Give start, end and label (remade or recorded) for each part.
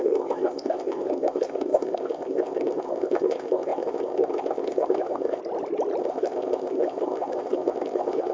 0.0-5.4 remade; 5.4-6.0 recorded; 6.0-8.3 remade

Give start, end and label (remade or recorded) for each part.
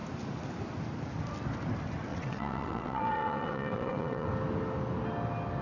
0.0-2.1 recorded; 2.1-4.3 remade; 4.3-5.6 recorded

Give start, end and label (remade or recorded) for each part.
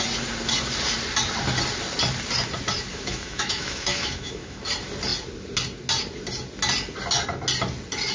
0.0-2.9 recorded; 2.9-4.6 remade; 4.6-8.1 recorded